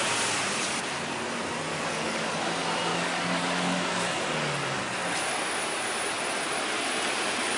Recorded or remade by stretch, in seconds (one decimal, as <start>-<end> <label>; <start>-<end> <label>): 0.0-1.7 recorded; 1.7-2.3 remade; 2.3-2.9 recorded; 2.9-4.8 remade; 4.8-7.6 recorded